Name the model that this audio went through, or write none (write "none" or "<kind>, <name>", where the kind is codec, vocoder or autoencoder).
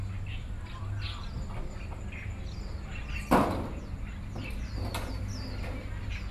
none